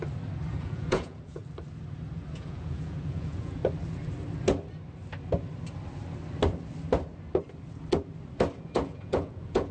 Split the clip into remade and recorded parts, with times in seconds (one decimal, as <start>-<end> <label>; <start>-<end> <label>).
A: 0.0-0.5 recorded; 0.5-1.4 remade; 1.4-2.3 recorded; 2.3-3.6 remade; 3.6-8.6 recorded; 8.6-9.7 remade